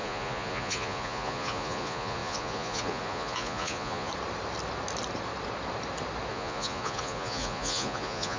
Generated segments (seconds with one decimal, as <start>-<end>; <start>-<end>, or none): 0.0-4.1; 6.3-8.4